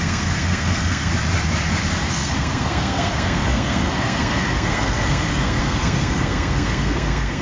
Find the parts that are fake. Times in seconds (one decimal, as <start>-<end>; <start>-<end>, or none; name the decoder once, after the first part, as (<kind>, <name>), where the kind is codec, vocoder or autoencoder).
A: 0.0-1.1 (codec, SNAC); 2.1-7.4